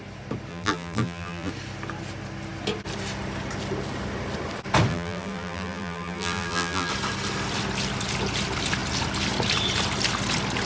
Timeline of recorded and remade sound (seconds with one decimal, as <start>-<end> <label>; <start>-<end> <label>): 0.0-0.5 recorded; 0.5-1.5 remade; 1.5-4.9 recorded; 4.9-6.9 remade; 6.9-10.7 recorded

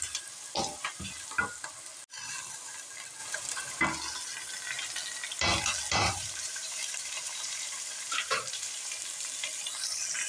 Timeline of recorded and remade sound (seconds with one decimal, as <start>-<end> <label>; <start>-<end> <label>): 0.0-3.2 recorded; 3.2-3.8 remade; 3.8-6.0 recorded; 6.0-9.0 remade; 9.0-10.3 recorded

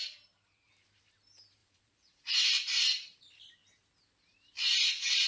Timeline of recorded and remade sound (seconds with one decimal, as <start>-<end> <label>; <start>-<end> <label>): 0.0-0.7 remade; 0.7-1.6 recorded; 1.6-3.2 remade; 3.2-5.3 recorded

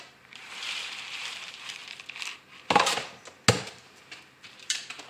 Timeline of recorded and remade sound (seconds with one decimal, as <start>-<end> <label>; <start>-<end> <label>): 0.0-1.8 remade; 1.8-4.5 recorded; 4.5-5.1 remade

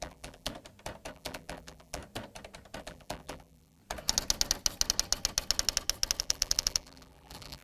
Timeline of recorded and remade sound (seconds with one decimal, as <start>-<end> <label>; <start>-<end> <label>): 0.0-0.5 remade; 0.5-1.1 recorded; 1.1-2.0 remade; 2.0-2.8 recorded; 2.8-3.8 remade; 3.8-6.2 recorded; 6.2-7.6 remade

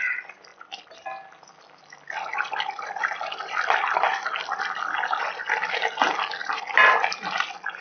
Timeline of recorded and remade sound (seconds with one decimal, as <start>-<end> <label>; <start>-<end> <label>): 0.0-6.4 remade; 6.4-6.9 recorded; 6.9-7.8 remade

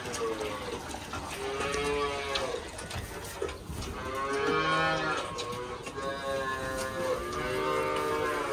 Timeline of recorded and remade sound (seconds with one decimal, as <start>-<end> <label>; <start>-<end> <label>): 0.0-8.5 recorded

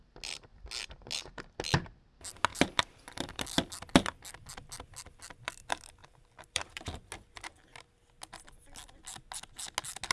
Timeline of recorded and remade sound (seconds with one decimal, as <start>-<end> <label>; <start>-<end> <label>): 0.0-2.5 recorded; 2.5-3.7 remade; 3.7-6.0 recorded; 6.0-7.0 remade; 7.0-10.1 recorded